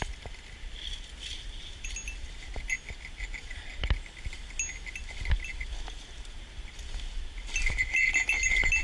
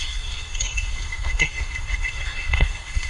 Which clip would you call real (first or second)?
first